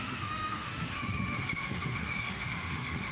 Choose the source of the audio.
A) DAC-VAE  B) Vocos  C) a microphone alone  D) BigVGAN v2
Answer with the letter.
A